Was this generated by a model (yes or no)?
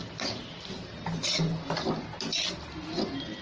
no